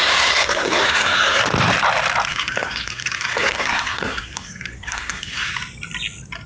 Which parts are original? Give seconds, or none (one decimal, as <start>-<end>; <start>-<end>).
1.4-2.3; 5.5-6.5